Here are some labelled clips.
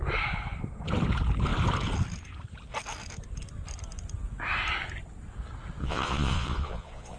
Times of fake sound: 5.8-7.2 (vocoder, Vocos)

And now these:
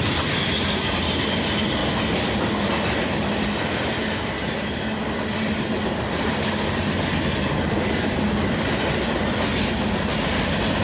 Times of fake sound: none

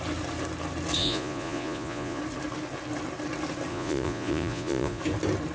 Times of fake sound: 1.0-2.2 (vocoder, Vocos); 3.7-5.0

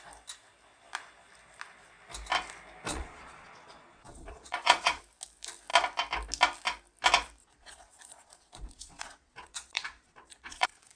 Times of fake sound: 2.9-5.0 (vocoder, Vocos); 7.4-11.0